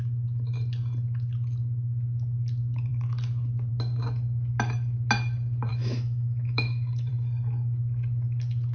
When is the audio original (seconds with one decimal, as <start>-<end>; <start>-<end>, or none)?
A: 0.0-5.7; 7.1-8.7